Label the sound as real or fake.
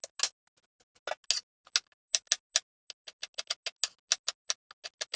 real